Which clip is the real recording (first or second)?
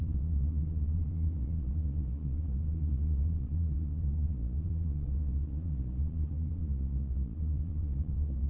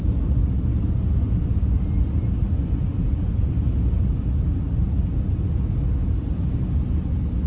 second